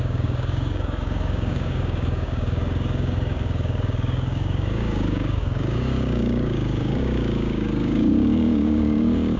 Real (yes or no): no